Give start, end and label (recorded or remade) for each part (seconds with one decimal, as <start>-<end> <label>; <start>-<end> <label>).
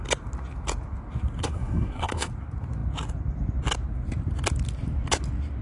0.0-1.4 recorded; 1.4-2.3 remade; 2.3-5.6 recorded